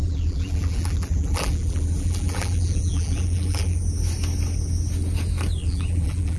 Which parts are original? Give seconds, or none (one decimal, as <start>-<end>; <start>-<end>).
3.8-5.6